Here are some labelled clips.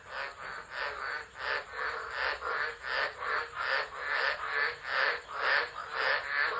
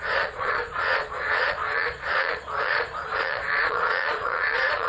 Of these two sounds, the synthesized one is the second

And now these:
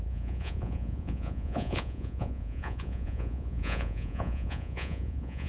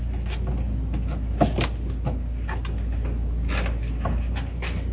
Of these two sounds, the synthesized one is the first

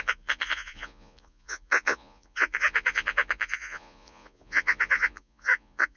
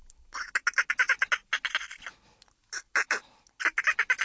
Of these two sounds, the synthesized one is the first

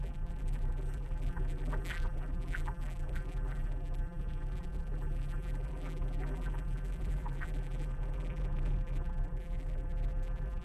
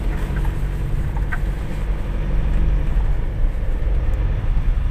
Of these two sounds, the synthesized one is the first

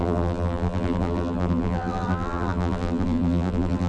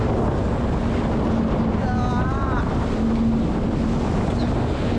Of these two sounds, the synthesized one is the first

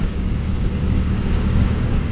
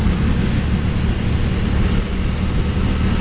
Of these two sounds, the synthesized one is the first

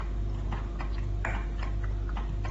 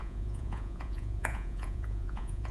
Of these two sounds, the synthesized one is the second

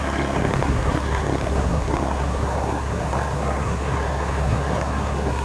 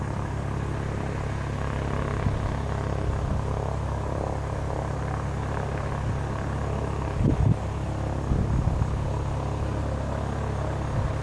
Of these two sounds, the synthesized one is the first